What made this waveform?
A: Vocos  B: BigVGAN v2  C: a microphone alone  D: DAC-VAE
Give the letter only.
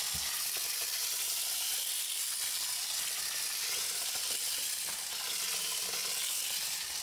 C